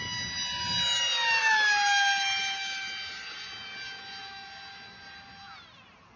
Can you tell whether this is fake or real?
real